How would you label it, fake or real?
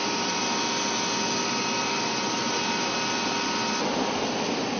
real